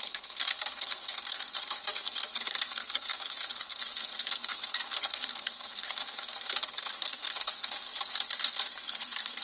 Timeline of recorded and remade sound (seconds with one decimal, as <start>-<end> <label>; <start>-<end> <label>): 0.0-7.9 remade; 7.9-8.7 recorded; 8.7-9.4 remade